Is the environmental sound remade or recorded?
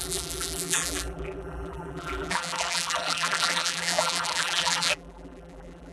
remade